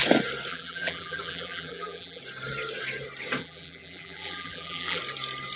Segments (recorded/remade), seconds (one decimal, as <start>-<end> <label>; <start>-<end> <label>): 0.0-0.5 recorded; 0.5-2.2 remade; 2.2-3.4 recorded; 3.4-5.0 remade; 5.0-5.6 recorded